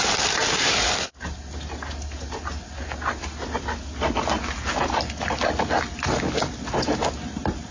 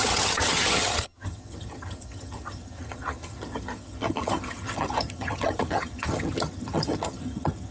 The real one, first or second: first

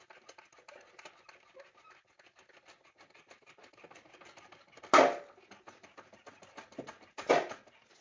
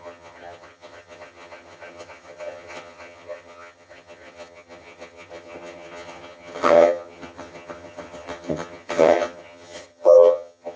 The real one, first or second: first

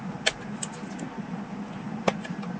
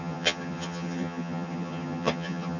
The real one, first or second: first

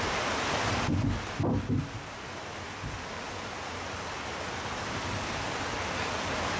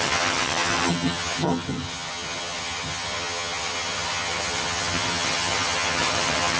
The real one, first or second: first